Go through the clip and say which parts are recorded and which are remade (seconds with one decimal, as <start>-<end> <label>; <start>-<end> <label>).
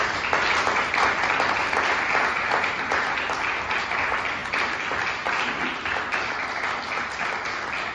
0.0-7.9 recorded